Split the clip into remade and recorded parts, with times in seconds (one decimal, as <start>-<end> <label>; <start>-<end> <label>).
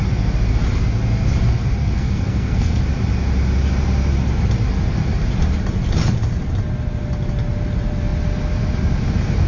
0.0-1.8 recorded; 1.8-2.8 remade; 2.8-9.5 recorded